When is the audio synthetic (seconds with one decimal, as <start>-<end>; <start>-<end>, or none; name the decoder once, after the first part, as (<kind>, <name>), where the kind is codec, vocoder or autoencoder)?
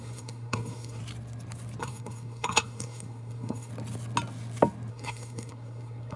0.0-1.0 (codec, SNAC); 1.8-3.7; 4.9-6.2